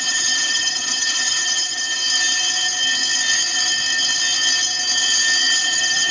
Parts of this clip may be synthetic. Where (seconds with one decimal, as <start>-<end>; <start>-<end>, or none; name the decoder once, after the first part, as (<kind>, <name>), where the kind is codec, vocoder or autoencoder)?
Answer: 0.0-2.0 (vocoder, HiFi-GAN); 5.6-6.1